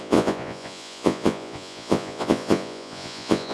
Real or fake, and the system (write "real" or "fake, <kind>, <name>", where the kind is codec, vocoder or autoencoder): fake, vocoder, Vocos